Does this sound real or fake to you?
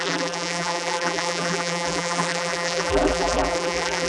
fake